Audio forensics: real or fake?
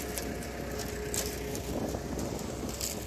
real